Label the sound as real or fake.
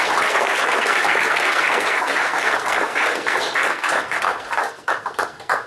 fake